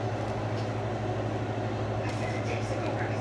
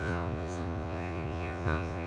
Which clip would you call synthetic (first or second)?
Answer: second